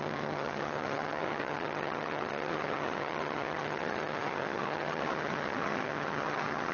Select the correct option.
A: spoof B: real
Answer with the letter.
A